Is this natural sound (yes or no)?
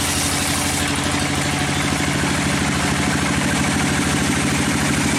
yes